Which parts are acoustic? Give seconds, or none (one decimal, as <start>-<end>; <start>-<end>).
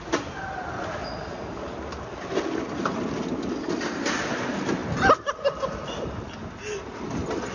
0.0-1.0; 2.6-7.5